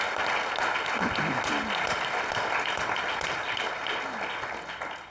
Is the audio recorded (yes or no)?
yes